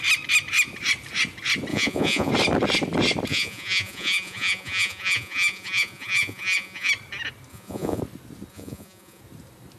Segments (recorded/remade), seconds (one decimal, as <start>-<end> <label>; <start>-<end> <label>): 0.0-1.7 recorded; 1.7-2.3 remade; 2.3-3.3 recorded; 3.3-6.9 remade; 6.9-7.5 recorded; 7.5-8.0 remade; 8.0-8.5 recorded; 8.5-9.2 remade; 9.2-9.8 recorded